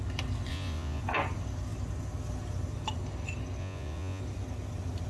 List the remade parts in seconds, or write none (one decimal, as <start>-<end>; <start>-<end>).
0.5-1.0; 3.6-4.2